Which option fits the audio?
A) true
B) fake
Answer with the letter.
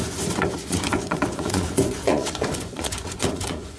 B